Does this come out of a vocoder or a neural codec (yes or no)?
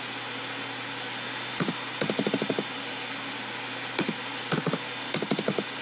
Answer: no